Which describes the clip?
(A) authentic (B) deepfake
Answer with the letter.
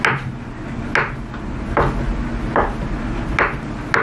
A